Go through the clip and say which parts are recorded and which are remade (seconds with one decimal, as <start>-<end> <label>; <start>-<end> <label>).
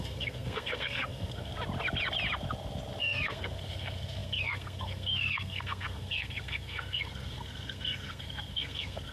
0.0-1.5 remade; 1.5-3.0 recorded; 3.0-9.1 remade